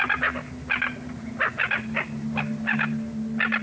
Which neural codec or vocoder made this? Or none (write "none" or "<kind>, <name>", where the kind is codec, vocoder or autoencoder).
none